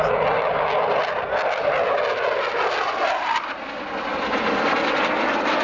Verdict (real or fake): real